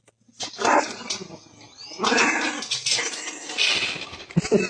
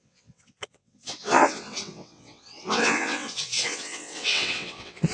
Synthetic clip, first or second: second